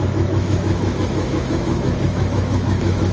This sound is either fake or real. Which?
fake